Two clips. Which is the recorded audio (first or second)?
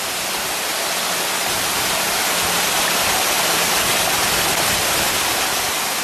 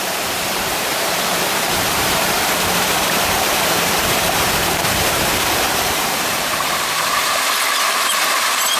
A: first